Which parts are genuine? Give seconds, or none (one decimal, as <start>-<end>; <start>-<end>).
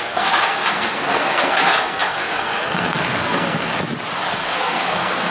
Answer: 3.7-4.3